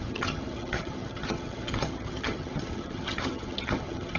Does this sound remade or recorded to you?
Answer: remade